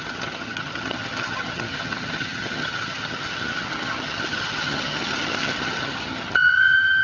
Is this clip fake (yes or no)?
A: yes